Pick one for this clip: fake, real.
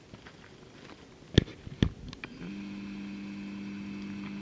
real